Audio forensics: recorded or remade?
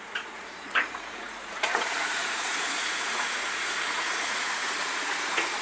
remade